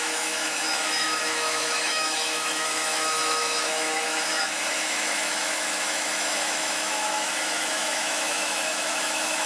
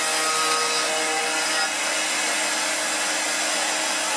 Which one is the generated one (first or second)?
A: first